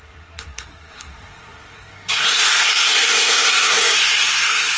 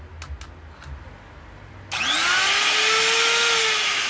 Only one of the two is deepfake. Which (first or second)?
first